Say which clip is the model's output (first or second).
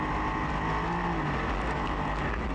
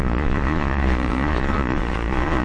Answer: second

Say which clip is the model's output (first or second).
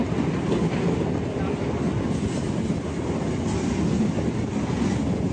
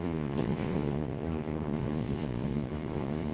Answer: second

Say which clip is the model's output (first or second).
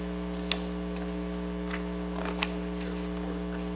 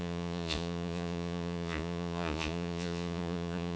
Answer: second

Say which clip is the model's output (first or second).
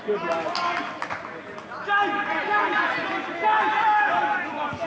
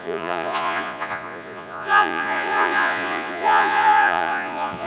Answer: second